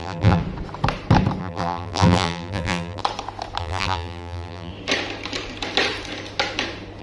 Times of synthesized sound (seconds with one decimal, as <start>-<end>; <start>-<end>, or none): 0.0-0.4; 1.4-3.0; 3.6-4.7